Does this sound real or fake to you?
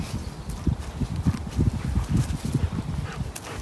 fake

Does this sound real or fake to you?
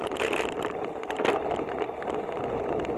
fake